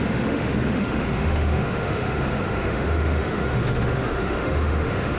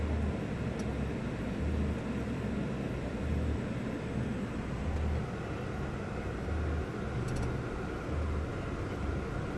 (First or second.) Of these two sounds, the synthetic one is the first